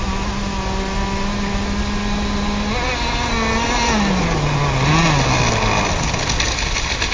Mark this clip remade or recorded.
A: recorded